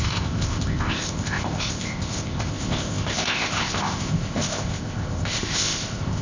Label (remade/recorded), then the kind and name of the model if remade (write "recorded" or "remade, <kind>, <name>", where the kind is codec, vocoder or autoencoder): remade, codec, ZipCodec